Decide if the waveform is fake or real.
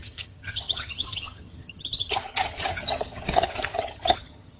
fake